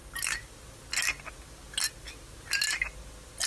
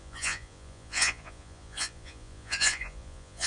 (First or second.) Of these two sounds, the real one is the first